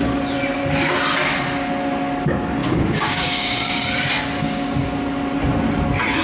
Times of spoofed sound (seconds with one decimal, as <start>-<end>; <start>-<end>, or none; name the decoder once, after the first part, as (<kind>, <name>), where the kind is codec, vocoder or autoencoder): 2.6-3.8 (codec, DAC); 4.4-4.9